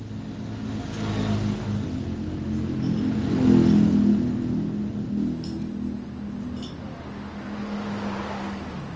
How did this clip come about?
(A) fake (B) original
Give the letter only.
B